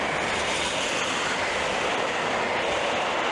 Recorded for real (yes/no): yes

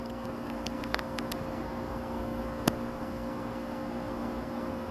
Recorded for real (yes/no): no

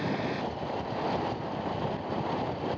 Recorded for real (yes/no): yes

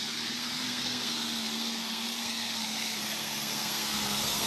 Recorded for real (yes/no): no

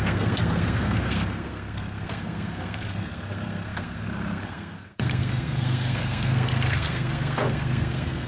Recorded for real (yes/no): no